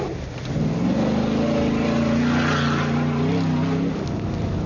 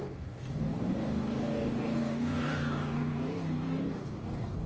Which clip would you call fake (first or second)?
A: second